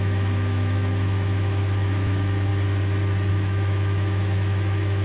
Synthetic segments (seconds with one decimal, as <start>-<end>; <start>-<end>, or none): 0.0-2.5; 3.3-5.0